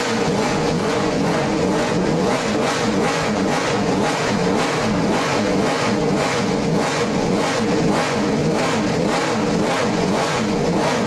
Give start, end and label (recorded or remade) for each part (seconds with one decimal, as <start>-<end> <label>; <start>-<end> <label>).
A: 0.0-4.4 remade; 4.4-5.1 recorded; 5.1-8.4 remade; 8.4-9.8 recorded; 9.8-11.1 remade